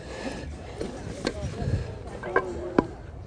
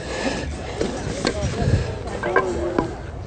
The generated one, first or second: first